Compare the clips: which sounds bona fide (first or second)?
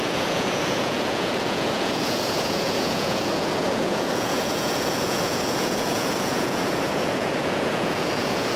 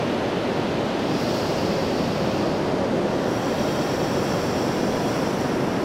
second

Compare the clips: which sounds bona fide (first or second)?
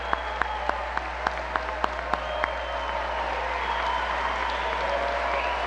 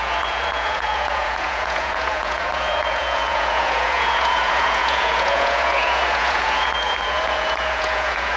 first